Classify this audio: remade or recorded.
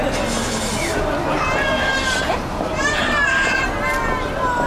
recorded